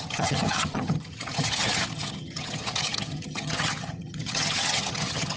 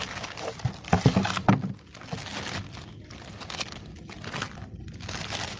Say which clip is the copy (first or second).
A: first